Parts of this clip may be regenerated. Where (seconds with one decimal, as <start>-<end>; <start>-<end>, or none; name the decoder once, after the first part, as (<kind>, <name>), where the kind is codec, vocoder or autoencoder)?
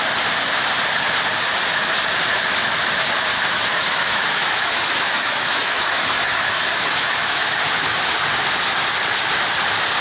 3.3-8.1 (autoencoder, DAC-VAE)